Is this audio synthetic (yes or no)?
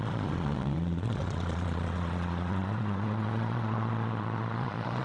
yes